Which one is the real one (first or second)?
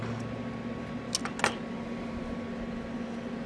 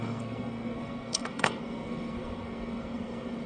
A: first